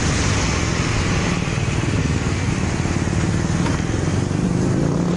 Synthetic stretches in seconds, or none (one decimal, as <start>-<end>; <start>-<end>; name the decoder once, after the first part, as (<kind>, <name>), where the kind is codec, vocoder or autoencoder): 2.0-2.5 (codec, SNAC)

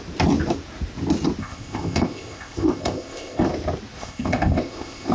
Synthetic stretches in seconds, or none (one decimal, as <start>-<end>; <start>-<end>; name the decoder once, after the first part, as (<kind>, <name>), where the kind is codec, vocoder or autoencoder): 1.4-3.5 (codec, ZipCodec); 4.0-5.1

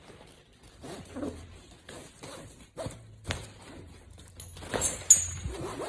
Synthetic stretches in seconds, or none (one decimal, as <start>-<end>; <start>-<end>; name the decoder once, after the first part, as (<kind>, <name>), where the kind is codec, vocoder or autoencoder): 0.8-4.3 (vocoder, BigVGAN v2)

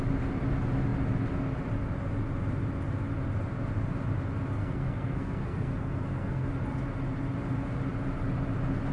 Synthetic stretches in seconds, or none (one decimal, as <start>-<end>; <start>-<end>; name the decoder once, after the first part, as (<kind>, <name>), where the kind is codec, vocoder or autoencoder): 4.6-6.5 (codec, SNAC)